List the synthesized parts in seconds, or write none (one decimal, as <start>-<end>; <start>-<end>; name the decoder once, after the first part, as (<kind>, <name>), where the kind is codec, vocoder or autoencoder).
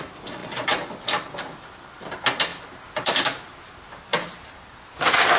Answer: 0.4-2.1 (vocoder, BigVGAN v2); 2.5-3.2